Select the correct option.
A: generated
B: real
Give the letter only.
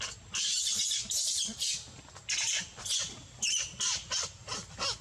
B